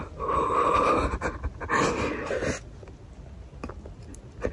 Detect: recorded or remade recorded